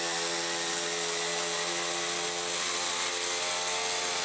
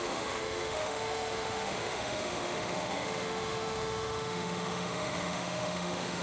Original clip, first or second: first